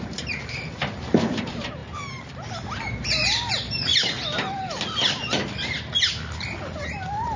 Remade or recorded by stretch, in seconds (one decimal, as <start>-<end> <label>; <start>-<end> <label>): 0.0-1.8 remade; 1.8-3.5 recorded; 3.5-3.9 remade; 3.9-6.6 recorded; 6.6-7.4 remade